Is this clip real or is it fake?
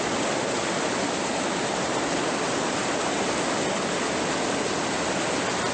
real